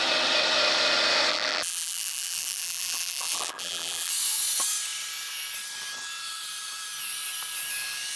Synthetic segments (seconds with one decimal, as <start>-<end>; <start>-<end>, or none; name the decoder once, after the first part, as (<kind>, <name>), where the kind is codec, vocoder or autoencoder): 1.3-4.1 (vocoder, BigVGAN v2)